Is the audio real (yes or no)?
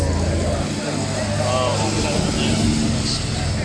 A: yes